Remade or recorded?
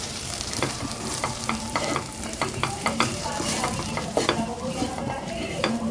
remade